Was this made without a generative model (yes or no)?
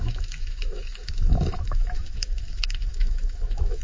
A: no